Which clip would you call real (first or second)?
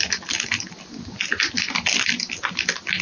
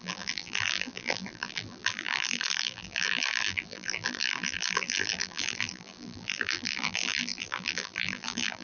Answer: first